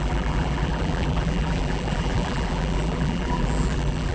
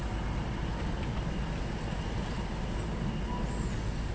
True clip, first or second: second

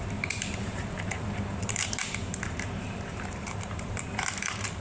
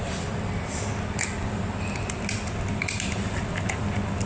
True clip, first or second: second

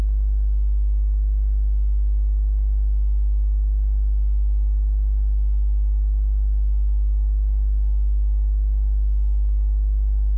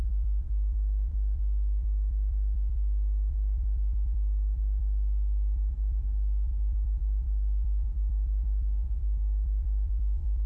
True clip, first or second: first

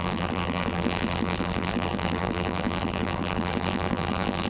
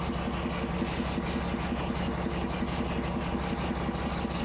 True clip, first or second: second